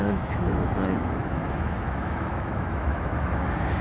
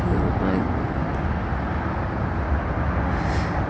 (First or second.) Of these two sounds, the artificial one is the first